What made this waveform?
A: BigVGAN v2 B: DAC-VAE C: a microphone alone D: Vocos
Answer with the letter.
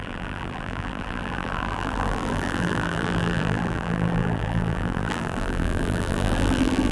A